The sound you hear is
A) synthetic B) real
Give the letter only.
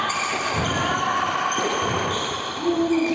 A